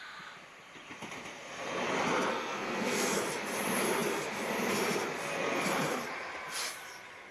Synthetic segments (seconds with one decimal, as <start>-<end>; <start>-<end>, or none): 2.3-3.2

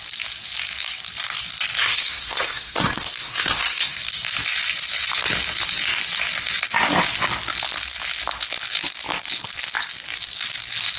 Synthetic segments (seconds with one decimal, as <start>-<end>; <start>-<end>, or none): 1.8-4.0

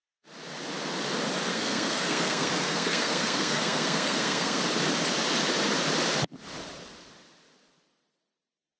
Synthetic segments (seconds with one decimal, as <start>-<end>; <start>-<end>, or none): 1.5-4.6

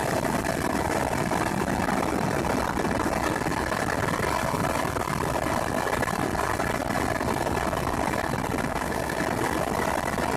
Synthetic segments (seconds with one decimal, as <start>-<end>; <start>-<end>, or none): 8.7-9.2

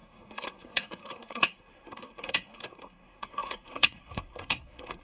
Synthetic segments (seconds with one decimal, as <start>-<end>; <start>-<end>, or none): 0.0-5.0